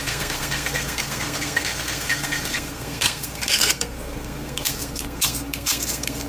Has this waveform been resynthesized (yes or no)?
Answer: yes